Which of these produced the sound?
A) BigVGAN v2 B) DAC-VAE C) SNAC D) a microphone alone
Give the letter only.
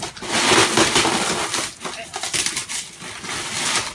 D